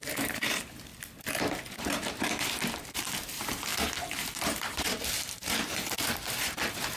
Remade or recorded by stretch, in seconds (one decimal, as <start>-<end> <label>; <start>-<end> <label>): 0.0-0.9 remade; 0.9-1.7 recorded; 1.7-7.0 remade